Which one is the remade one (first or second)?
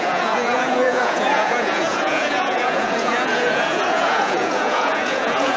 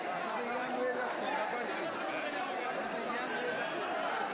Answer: first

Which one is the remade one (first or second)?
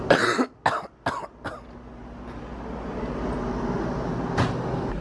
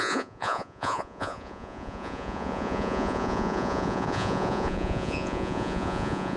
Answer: second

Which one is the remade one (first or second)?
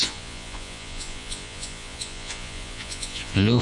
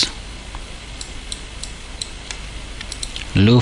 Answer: first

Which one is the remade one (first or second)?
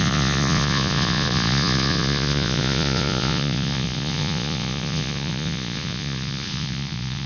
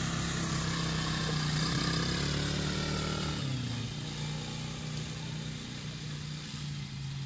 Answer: first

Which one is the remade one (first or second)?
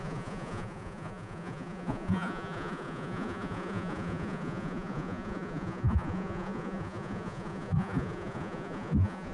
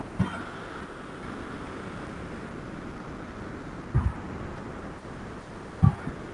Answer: first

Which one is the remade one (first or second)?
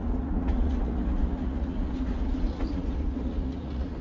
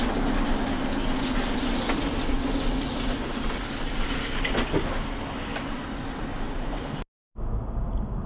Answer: first